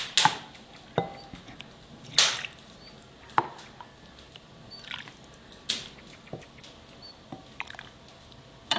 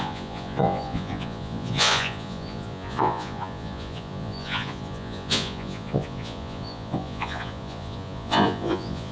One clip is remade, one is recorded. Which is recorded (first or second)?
first